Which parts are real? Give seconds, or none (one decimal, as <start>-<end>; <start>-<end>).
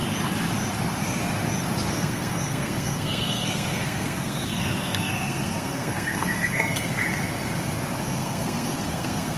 0.0-1.9; 7.0-8.0